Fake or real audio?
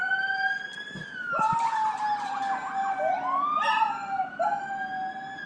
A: real